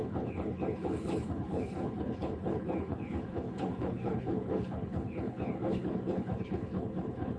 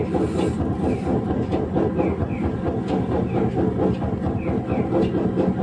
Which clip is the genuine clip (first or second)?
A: second